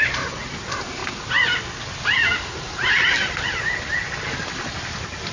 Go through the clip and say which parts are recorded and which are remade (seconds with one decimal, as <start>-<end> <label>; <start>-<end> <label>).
0.0-5.3 recorded